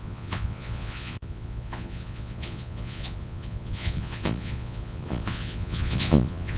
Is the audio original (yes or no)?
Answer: no